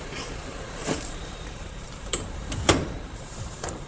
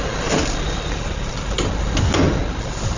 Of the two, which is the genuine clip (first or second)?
second